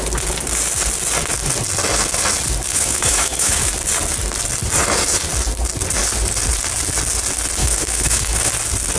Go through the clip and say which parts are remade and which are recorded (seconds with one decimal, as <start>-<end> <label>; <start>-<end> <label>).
0.0-2.7 recorded; 2.7-3.7 remade; 3.7-7.6 recorded; 7.6-8.5 remade; 8.5-9.0 recorded